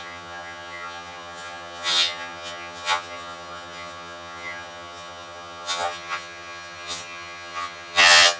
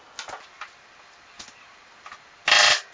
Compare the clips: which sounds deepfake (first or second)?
first